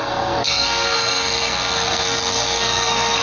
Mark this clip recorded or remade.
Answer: remade